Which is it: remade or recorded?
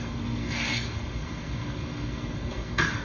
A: remade